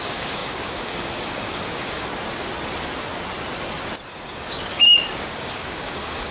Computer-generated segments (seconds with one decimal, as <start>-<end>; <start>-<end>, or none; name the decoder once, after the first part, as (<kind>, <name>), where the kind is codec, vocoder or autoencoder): 0.0-2.1 (codec, DAC); 4.1-6.3